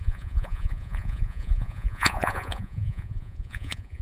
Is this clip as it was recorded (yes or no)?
no